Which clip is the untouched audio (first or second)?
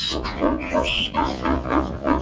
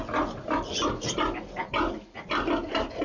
second